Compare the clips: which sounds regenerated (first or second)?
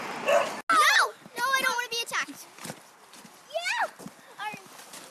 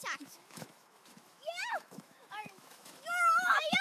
second